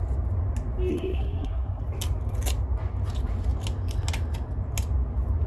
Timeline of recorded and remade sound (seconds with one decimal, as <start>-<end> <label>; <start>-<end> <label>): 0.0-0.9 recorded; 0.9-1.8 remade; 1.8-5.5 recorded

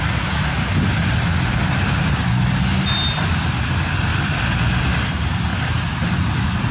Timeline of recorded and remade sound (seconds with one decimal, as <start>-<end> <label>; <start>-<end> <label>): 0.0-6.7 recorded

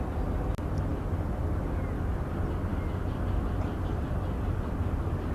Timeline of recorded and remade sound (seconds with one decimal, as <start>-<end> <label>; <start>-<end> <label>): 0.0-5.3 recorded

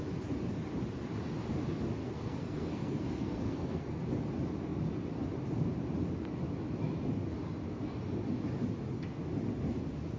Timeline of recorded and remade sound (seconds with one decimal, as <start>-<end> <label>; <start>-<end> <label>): 0.0-2.0 recorded; 2.0-4.0 remade; 4.0-10.2 recorded

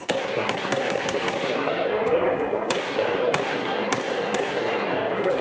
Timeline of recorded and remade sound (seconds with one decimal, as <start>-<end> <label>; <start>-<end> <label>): 0.0-5.4 remade

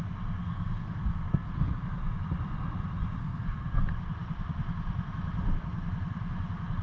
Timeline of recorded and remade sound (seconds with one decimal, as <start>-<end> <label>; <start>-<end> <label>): 0.0-0.4 recorded; 0.4-1.8 remade; 1.8-3.2 recorded; 3.2-3.8 remade; 3.8-6.8 recorded

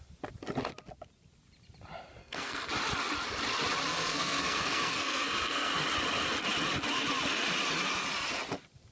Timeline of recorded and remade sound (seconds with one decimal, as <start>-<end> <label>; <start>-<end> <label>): 0.0-2.2 recorded; 2.2-2.7 remade; 2.7-3.9 recorded; 3.9-5.7 remade; 5.7-8.9 recorded

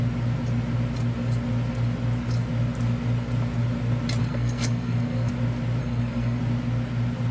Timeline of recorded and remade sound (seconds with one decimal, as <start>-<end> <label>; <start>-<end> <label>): 0.0-4.2 recorded; 4.2-5.3 remade; 5.3-5.8 recorded; 5.8-6.4 remade; 6.4-7.3 recorded